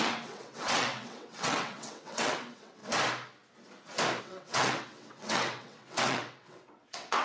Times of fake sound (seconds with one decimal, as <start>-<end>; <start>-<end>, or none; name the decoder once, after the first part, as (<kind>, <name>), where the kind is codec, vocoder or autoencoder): 0.0-2.8 (vocoder, WaveNeXt); 4.2-7.2